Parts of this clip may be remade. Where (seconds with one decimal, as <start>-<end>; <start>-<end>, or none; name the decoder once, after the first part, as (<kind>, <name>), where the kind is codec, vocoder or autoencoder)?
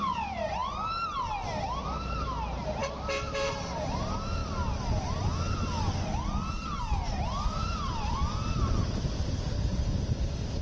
0.0-4.4 (vocoder, BigVGAN v2); 6.8-8.2; 8.9-10.6